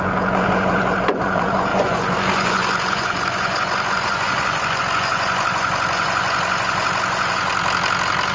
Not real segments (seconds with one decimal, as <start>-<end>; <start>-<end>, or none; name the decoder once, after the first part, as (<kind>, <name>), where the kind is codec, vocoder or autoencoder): 0.0-7.5 (vocoder, Vocos)